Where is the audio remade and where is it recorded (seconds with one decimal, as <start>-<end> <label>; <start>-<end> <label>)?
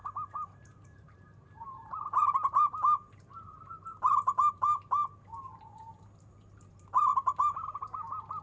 0.0-7.1 remade; 7.1-7.8 recorded; 7.8-8.4 remade